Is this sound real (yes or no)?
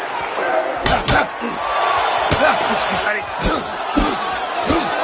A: yes